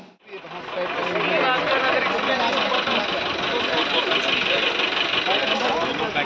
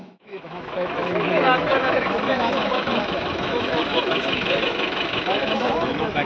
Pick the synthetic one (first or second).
second